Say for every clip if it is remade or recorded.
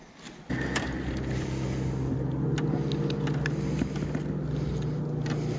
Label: recorded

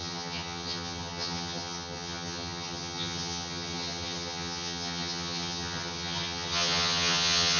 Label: remade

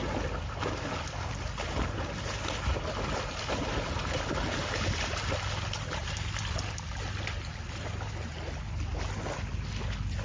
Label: recorded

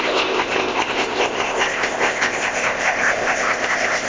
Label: remade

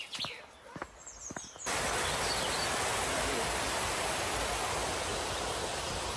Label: recorded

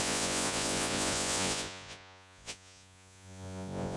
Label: remade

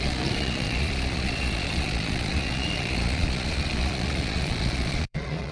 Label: remade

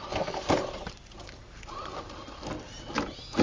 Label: recorded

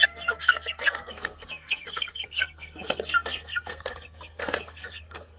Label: remade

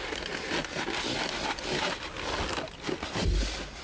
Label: recorded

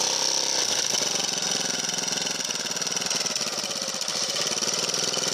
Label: recorded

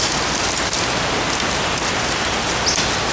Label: recorded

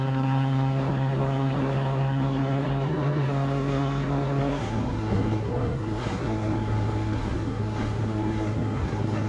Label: remade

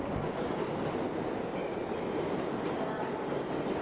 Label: recorded